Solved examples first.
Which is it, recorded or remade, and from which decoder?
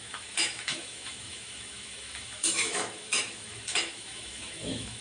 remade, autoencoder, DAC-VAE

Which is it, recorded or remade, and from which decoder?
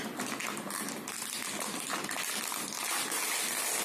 recorded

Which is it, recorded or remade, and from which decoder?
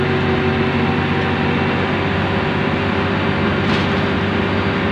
recorded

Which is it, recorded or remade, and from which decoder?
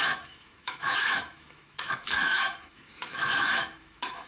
remade, autoencoder, DAC-VAE